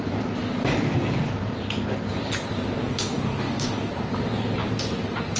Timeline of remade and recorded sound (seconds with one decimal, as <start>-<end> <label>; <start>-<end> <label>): 0.0-2.8 recorded; 2.8-3.9 remade; 3.9-5.4 recorded